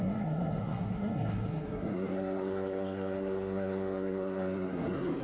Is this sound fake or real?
fake